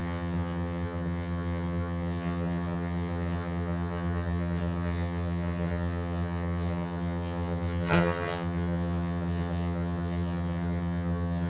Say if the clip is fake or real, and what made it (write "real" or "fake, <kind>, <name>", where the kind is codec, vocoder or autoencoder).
fake, vocoder, HiFi-GAN